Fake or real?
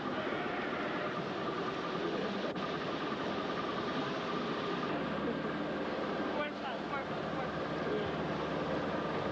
real